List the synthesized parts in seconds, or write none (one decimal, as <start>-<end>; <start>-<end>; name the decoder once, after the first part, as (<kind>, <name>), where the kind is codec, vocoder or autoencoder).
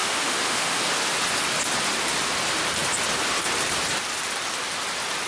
0.0-0.8 (autoencoder, DAC-VAE)